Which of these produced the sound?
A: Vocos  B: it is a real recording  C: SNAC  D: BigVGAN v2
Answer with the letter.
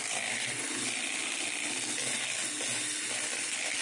B